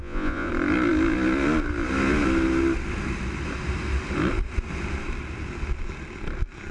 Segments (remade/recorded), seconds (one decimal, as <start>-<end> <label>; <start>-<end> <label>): 0.0-0.5 remade; 0.5-6.7 recorded